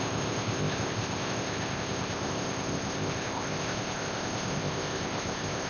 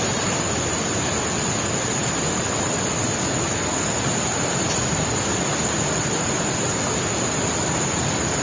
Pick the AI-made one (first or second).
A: first